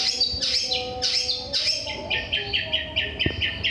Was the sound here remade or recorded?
recorded